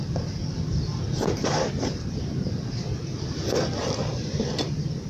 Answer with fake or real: real